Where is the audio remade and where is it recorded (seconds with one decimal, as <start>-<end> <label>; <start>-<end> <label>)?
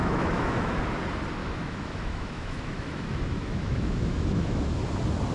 0.0-0.8 remade; 0.8-1.4 recorded; 1.4-4.6 remade; 4.6-5.3 recorded